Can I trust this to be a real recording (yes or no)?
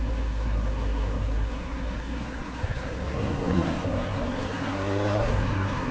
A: no